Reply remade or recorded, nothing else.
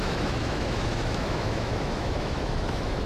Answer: remade